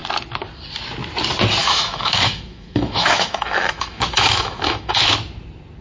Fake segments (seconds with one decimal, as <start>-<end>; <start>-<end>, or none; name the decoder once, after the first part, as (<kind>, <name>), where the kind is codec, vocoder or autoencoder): 1.6-5.1 (autoencoder, DAC-VAE)